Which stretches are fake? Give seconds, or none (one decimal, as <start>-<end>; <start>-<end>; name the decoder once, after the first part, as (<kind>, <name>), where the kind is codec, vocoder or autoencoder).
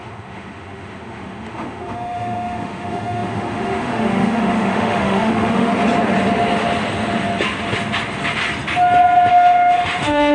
0.0-5.7 (autoencoder, DAC-VAE); 9.3-10.3